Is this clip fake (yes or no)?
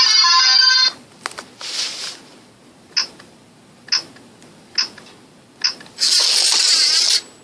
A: no